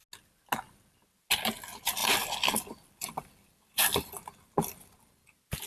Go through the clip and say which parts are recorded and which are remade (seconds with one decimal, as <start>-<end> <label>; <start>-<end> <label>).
0.0-5.7 recorded

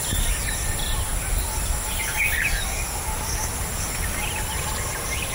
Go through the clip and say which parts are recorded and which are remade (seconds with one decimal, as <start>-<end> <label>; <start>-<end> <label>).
0.0-5.3 recorded

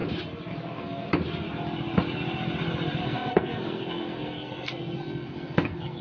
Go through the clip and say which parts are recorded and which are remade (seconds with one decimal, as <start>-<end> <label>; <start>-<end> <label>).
0.0-0.5 recorded; 0.5-1.1 remade; 1.1-3.0 recorded; 3.0-6.0 remade

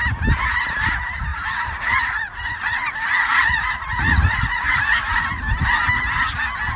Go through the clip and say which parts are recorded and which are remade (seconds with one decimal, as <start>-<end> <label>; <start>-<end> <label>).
0.0-1.3 recorded; 1.3-5.4 remade; 5.4-6.8 recorded

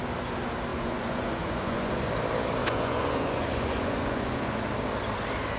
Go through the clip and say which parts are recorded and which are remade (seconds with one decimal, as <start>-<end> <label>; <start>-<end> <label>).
0.0-0.7 recorded; 0.7-2.1 remade; 2.1-2.6 recorded; 2.6-4.5 remade; 4.5-5.6 recorded

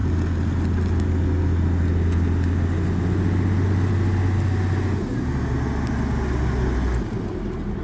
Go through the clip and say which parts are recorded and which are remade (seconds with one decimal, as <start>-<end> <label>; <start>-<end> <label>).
0.0-7.8 recorded

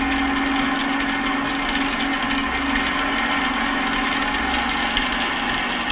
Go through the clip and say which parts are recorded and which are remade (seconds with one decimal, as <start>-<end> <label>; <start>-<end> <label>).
0.0-5.9 recorded

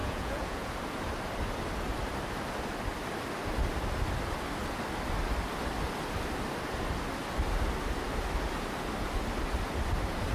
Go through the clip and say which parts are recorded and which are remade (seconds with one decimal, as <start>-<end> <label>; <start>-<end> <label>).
0.0-0.7 remade; 0.7-10.3 recorded